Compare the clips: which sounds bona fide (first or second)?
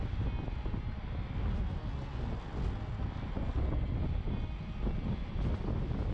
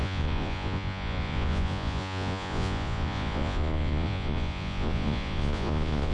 first